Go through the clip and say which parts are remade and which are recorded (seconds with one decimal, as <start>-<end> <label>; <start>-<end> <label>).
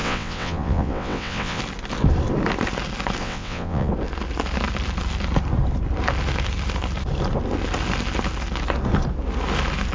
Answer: 0.0-1.6 remade; 1.6-3.2 recorded; 3.2-3.9 remade; 3.9-9.9 recorded